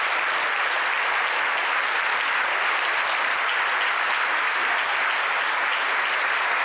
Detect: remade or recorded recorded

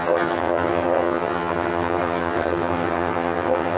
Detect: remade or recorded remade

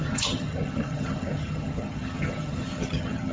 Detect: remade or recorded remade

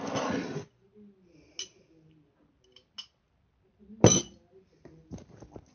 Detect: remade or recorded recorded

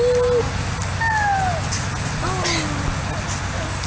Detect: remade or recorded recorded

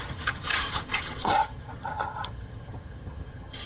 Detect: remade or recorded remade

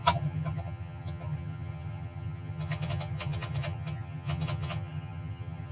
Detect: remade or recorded remade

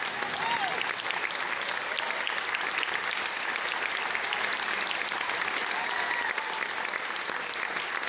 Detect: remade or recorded recorded